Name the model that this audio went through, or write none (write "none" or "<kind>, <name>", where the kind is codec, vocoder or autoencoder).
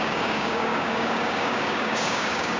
codec, DAC